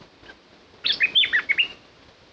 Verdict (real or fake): real